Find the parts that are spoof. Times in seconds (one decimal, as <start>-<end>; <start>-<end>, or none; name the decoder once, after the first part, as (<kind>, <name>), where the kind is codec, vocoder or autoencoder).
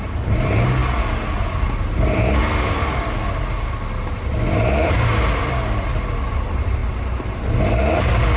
none